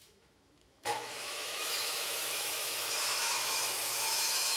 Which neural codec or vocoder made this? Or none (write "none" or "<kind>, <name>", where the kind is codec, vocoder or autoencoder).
autoencoder, DAC-VAE